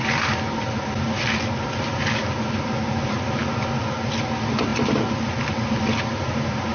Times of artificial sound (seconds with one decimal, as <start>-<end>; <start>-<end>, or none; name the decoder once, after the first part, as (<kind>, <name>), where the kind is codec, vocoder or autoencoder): none